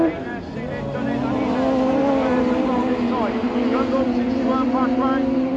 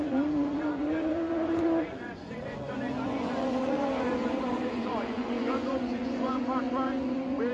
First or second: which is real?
first